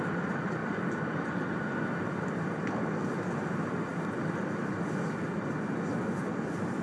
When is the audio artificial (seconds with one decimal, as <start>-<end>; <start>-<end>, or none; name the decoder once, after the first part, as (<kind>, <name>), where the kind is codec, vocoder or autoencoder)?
none